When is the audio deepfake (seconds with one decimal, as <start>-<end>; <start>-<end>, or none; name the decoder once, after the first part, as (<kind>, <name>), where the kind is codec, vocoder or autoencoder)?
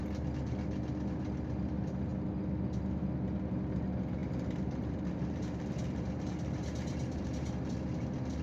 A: 4.2-7.2 (vocoder, BigVGAN v2)